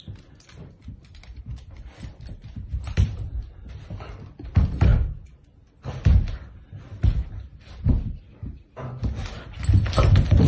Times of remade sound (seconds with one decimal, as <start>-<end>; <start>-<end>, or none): none